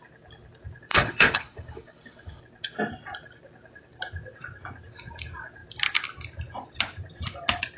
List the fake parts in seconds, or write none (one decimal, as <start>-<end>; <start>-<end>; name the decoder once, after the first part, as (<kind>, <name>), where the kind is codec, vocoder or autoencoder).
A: 0.9-2.4 (codec, HILCodec)